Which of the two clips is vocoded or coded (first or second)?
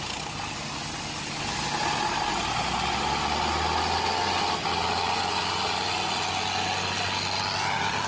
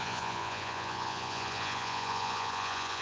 second